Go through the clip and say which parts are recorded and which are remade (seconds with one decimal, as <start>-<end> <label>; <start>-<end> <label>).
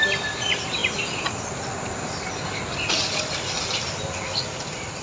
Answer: 0.0-0.8 remade; 0.8-3.8 recorded; 3.8-5.0 remade